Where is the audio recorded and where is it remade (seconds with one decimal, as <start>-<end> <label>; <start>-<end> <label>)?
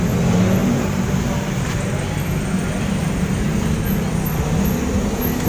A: 0.0-0.6 recorded; 0.6-1.6 remade; 1.6-3.0 recorded; 3.0-3.7 remade; 3.7-5.5 recorded